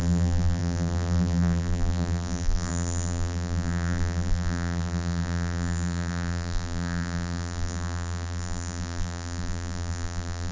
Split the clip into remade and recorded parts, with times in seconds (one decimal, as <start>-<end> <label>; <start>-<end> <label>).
0.0-10.5 remade